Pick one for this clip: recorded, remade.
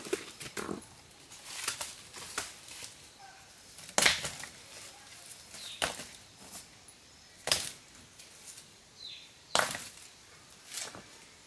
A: recorded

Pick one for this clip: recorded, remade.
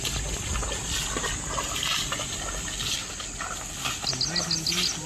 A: recorded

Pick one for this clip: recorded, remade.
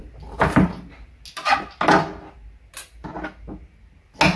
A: recorded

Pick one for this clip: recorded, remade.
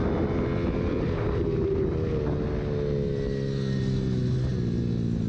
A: recorded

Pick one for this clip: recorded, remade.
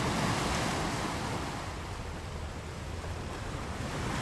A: recorded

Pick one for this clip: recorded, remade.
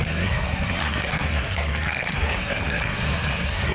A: remade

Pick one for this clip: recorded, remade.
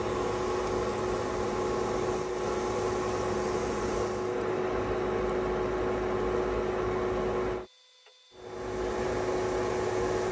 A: recorded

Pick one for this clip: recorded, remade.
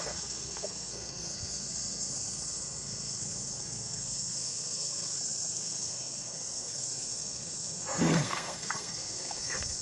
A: remade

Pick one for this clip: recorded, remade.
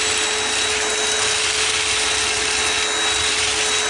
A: recorded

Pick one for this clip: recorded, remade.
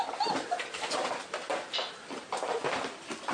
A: recorded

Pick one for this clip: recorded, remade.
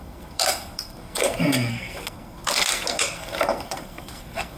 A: remade